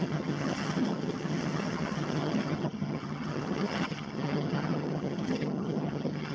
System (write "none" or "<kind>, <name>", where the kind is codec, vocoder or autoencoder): vocoder, HiFi-GAN